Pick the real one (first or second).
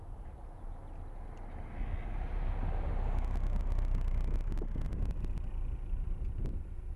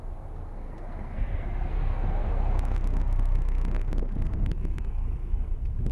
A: first